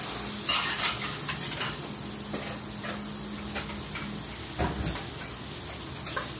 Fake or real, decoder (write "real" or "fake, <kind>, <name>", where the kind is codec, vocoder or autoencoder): real